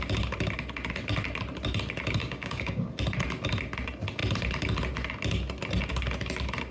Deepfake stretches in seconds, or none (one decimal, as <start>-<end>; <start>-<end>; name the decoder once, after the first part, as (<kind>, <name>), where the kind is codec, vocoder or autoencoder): 2.2-2.9 (codec, DAC)